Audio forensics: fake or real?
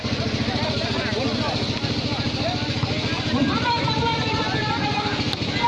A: real